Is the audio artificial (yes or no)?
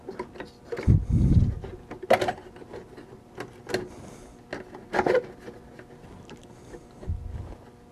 no